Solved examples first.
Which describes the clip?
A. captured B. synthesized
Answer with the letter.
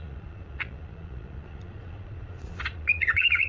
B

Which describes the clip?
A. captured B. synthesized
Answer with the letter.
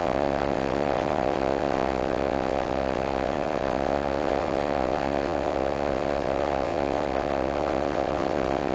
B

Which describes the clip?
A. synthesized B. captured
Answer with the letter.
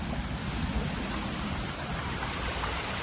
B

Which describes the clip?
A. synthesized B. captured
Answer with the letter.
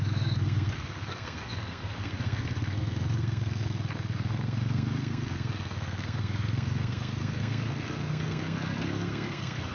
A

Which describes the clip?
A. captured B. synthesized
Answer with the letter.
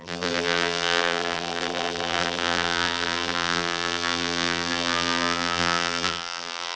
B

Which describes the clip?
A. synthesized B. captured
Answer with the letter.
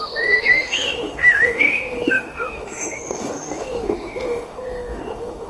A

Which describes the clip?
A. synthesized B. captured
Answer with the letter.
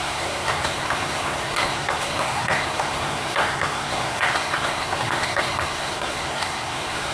A